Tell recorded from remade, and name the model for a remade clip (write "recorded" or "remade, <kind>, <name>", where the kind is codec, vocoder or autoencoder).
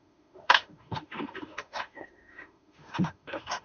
remade, autoencoder, DAC-VAE